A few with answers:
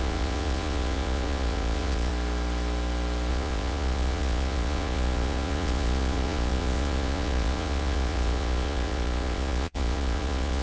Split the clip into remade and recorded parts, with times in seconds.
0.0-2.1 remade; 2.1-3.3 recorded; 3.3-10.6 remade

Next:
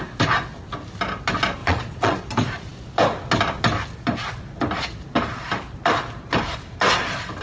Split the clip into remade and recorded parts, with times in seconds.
0.0-1.6 recorded; 1.6-2.2 remade; 2.2-7.4 recorded

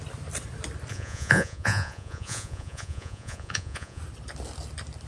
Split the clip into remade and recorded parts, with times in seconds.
0.0-0.9 recorded; 0.9-4.0 remade; 4.0-5.1 recorded

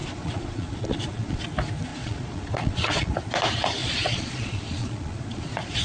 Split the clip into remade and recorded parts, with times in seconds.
0.0-1.4 remade; 1.4-1.9 recorded; 1.9-3.1 remade; 3.1-3.8 recorded; 3.8-5.8 remade

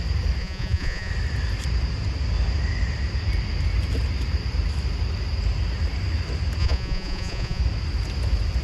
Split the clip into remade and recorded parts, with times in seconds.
0.0-0.4 recorded; 0.4-1.1 remade; 1.1-6.6 recorded; 6.6-7.6 remade; 7.6-8.6 recorded

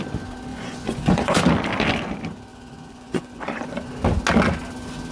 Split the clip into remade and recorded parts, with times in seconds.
0.0-0.5 recorded; 0.5-1.4 remade; 1.4-2.5 recorded; 2.5-3.9 remade; 3.9-5.1 recorded

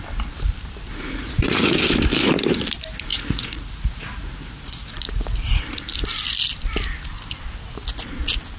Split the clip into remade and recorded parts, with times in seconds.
0.0-0.9 recorded; 0.9-1.7 remade; 1.7-3.1 recorded; 3.1-5.6 remade; 5.6-8.6 recorded

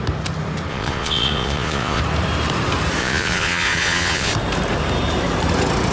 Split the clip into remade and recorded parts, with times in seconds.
0.0-0.7 recorded; 0.7-2.0 remade; 2.0-3.0 recorded; 3.0-4.3 remade; 4.3-5.9 recorded